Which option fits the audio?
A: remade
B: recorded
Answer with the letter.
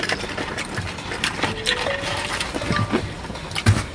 B